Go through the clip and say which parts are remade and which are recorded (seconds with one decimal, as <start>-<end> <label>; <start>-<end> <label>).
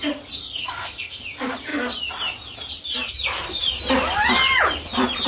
0.0-0.4 recorded; 0.4-1.2 remade; 1.2-5.3 recorded